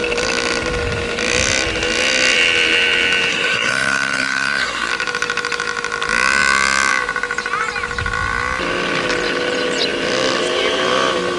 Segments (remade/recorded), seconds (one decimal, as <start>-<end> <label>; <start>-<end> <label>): 0.0-3.3 recorded; 3.3-4.9 remade; 4.9-11.4 recorded